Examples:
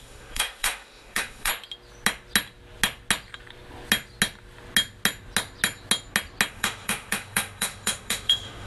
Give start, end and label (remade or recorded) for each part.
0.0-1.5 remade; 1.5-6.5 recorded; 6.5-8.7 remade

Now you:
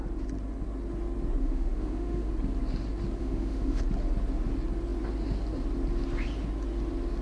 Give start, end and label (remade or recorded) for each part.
0.0-1.4 recorded; 1.4-2.3 remade; 2.3-3.2 recorded; 3.2-3.8 remade; 3.8-7.2 recorded

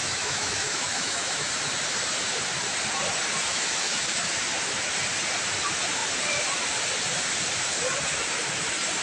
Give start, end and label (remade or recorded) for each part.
0.0-1.5 remade; 1.5-3.5 recorded; 3.5-4.3 remade; 4.3-9.0 recorded

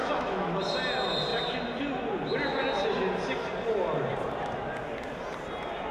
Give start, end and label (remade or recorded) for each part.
0.0-0.6 remade; 0.6-5.9 recorded

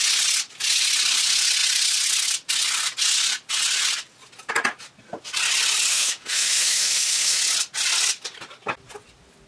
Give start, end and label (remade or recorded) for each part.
0.0-5.9 recorded; 5.9-7.4 remade; 7.4-9.5 recorded